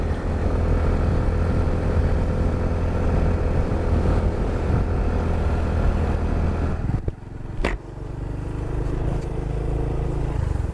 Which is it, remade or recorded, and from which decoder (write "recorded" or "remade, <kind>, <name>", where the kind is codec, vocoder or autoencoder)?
recorded